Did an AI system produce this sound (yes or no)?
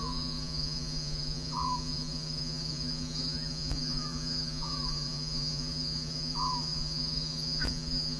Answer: yes